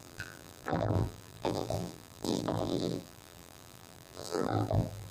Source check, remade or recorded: remade